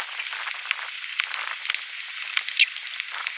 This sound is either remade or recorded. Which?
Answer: recorded